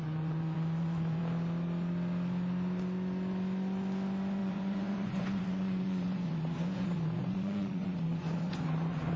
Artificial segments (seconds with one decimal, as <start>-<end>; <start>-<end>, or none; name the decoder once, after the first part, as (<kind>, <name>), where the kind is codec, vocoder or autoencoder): 0.0-1.2 (vocoder, Vocos); 4.4-9.2